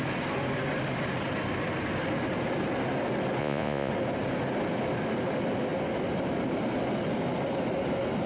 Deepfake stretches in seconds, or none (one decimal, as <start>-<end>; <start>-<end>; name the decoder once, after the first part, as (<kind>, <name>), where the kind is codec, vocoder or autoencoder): 3.4-3.9 (vocoder, Vocos)